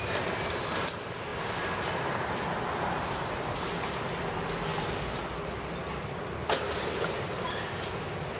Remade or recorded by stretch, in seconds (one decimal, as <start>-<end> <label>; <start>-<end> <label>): 0.0-8.4 recorded